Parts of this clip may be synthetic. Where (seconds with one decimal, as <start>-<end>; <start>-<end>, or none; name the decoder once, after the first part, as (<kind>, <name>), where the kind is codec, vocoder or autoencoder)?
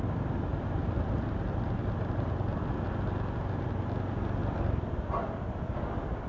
0.5-2.9 (vocoder, BigVGAN v2); 4.4-6.3